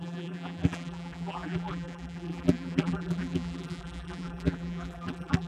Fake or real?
fake